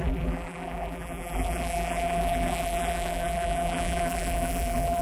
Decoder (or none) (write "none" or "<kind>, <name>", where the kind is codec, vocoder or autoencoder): vocoder, BigVGAN v2